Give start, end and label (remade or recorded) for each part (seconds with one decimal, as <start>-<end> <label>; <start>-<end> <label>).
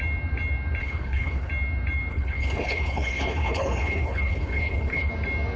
0.0-0.8 recorded; 0.8-1.5 remade; 1.5-2.1 recorded; 2.1-5.1 remade; 5.1-5.6 recorded